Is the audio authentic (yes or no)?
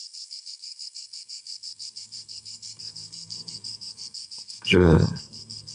no